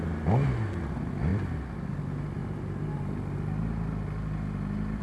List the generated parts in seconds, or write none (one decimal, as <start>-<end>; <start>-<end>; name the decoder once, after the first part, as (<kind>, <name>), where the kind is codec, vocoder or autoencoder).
2.4-3.1 (vocoder, BigVGAN v2)

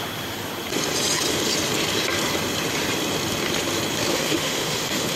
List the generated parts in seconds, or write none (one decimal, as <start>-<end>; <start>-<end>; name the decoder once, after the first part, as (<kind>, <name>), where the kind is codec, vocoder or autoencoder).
4.1-5.2 (autoencoder, DAC-VAE)